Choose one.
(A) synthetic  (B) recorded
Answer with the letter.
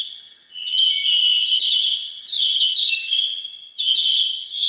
A